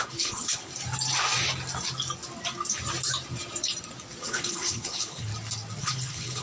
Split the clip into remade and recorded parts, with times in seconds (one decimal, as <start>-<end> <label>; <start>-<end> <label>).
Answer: 0.0-0.7 remade; 0.7-4.2 recorded; 4.2-5.3 remade; 5.3-5.8 recorded; 5.8-6.4 remade